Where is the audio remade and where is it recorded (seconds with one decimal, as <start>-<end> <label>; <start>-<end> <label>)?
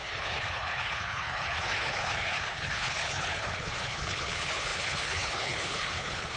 0.0-6.4 remade